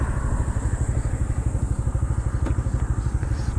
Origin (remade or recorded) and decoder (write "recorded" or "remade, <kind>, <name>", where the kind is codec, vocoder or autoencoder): recorded